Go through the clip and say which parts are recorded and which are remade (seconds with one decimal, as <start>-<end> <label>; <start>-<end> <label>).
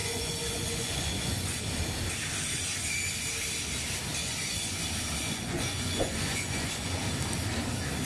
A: 0.0-1.6 remade; 1.6-4.2 recorded; 4.2-4.8 remade; 4.8-5.2 recorded; 5.2-7.0 remade; 7.0-8.1 recorded